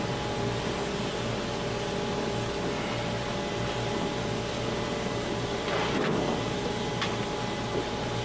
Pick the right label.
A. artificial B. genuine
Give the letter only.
B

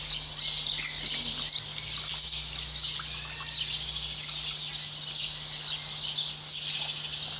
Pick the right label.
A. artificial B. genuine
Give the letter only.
B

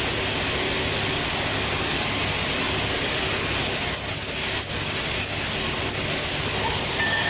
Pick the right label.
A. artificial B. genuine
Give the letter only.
B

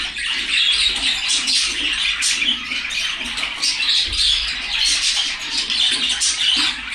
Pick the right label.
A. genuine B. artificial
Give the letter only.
A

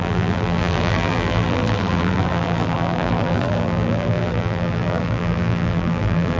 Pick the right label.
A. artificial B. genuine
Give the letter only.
A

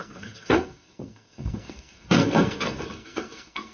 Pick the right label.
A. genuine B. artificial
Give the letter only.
B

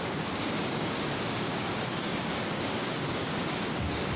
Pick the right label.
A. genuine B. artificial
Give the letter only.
B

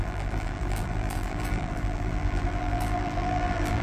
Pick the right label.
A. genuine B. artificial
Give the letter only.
B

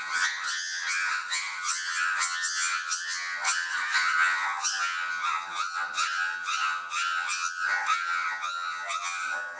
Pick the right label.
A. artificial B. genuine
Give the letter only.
A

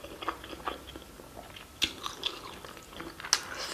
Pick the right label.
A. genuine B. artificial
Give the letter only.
A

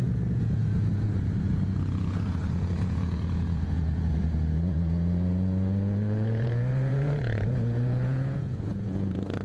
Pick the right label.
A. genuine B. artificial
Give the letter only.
B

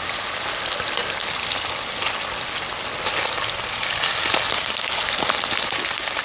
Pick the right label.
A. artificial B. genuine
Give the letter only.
B